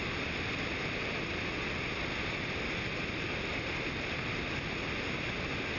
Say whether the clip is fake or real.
real